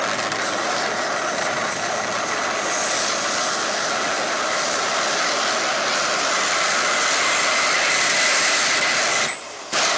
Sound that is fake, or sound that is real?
real